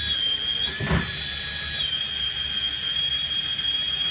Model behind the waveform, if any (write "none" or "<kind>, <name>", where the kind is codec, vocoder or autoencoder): none